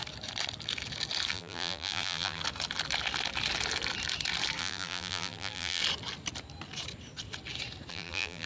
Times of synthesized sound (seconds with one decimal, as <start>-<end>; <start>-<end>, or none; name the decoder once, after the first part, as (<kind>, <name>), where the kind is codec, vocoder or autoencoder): 1.3-2.4 (vocoder, BigVGAN v2); 4.6-5.8; 7.9-8.5